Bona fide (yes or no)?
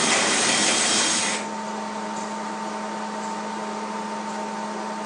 yes